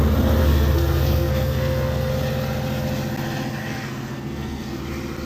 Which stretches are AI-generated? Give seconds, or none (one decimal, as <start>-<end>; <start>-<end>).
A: 0.4-2.1; 3.6-4.8

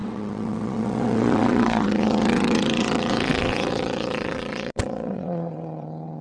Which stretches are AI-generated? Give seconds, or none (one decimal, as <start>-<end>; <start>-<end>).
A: 0.0-6.2

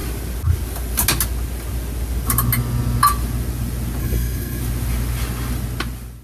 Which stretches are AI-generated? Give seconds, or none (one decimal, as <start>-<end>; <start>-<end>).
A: 4.0-4.6

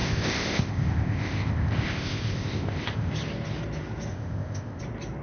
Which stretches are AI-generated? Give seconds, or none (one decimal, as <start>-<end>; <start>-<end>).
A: 0.0-3.1; 4.1-4.8

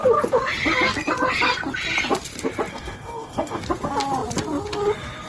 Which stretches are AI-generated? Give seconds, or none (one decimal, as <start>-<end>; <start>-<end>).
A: 2.7-3.6

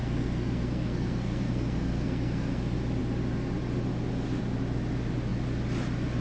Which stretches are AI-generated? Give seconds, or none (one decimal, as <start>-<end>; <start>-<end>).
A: 0.0-2.6

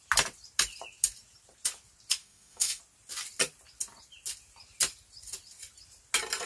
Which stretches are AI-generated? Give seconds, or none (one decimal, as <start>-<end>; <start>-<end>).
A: 2.2-2.8